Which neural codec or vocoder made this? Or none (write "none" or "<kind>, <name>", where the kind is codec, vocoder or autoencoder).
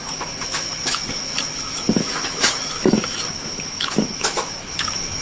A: autoencoder, DAC-VAE